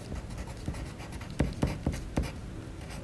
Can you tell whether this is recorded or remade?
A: recorded